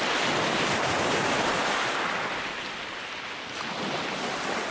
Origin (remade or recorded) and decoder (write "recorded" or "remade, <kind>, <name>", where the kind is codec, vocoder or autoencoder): recorded